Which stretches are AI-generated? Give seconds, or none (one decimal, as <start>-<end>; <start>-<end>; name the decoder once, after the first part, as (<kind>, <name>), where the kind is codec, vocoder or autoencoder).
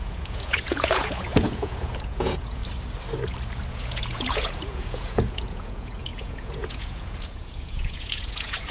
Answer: 0.0-2.6 (vocoder, Vocos); 3.7-8.7